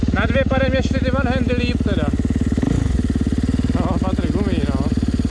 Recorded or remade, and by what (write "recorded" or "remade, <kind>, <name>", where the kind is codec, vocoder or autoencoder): recorded